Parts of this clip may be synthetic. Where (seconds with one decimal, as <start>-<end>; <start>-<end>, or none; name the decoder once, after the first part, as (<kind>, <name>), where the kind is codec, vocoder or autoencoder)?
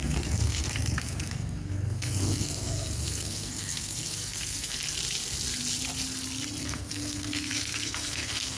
0.0-4.8 (codec, SNAC); 6.6-8.6